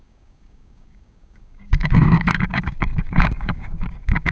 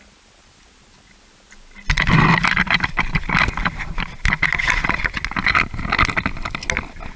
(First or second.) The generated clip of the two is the first